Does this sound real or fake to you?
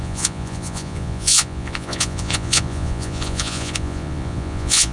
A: fake